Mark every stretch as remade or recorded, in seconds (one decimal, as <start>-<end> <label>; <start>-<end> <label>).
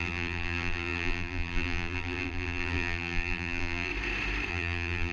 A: 0.0-3.9 remade; 3.9-4.5 recorded; 4.5-5.1 remade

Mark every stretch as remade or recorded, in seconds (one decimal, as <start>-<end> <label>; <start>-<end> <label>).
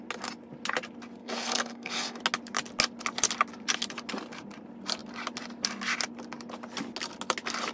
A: 0.0-1.2 recorded; 1.2-2.2 remade; 2.2-7.7 recorded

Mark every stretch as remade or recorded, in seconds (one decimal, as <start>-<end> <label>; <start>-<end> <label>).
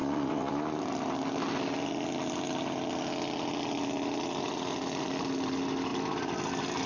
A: 0.0-0.5 remade; 0.5-6.9 recorded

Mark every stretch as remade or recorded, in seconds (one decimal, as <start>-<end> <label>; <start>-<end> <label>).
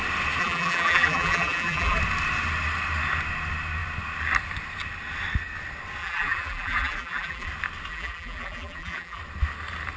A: 0.0-0.4 recorded; 0.4-2.0 remade; 2.0-6.0 recorded; 6.0-7.5 remade; 7.5-7.9 recorded; 7.9-9.2 remade; 9.2-10.0 recorded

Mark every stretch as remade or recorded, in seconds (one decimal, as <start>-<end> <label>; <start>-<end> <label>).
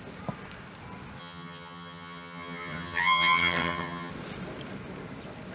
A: 0.0-1.2 recorded; 1.2-4.1 remade; 4.1-5.5 recorded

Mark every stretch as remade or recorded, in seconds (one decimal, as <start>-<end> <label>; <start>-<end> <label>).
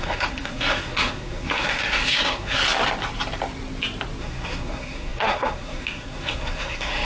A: 0.0-2.6 remade; 2.6-4.2 recorded; 4.2-7.0 remade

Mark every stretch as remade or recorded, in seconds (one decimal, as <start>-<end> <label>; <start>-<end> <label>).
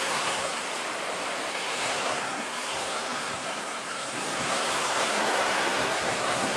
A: 0.0-0.6 remade; 0.6-1.5 recorded; 1.5-6.6 remade